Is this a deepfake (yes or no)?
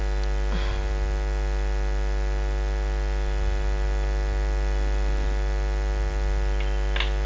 no